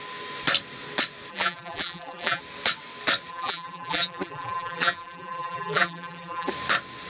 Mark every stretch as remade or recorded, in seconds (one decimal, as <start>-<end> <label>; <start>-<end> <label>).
0.0-1.3 recorded; 1.3-2.4 remade; 2.4-3.3 recorded; 3.3-6.5 remade; 6.5-7.1 recorded